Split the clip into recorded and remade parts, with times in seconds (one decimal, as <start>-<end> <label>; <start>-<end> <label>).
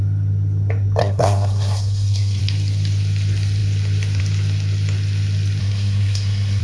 0.0-1.0 recorded; 1.0-2.4 remade; 2.4-5.6 recorded; 5.6-6.6 remade